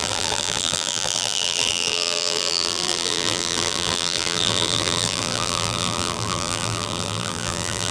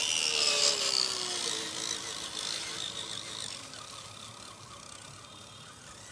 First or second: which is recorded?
second